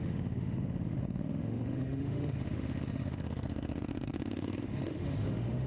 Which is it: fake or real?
fake